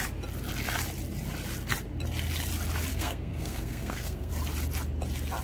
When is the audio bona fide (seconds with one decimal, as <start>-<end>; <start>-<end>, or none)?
0.0-2.9; 4.3-5.4